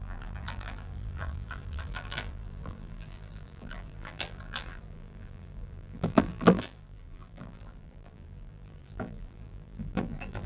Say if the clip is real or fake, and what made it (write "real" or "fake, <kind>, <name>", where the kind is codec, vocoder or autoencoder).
fake, vocoder, BigVGAN v2